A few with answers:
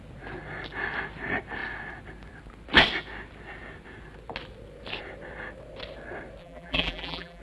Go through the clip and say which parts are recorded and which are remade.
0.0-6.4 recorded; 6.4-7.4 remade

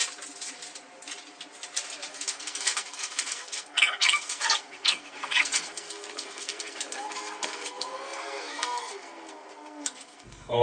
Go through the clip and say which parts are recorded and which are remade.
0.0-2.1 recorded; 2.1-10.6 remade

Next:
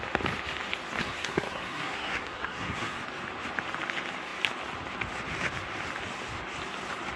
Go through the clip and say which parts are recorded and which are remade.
0.0-1.0 recorded; 1.0-3.0 remade; 3.0-7.2 recorded

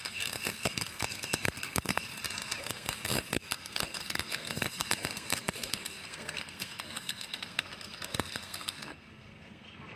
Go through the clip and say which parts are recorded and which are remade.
0.0-2.1 remade; 2.1-2.6 recorded; 2.6-10.0 remade